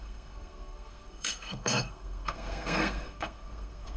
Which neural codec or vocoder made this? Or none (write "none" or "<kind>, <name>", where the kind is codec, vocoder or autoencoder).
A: codec, SNAC